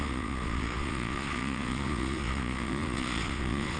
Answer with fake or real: fake